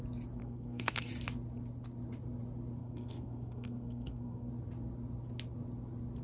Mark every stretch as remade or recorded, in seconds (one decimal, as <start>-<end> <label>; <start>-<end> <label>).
0.0-0.4 recorded; 0.4-1.1 remade; 1.1-2.8 recorded; 2.8-4.5 remade; 4.5-6.2 recorded